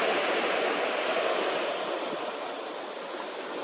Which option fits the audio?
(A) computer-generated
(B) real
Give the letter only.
B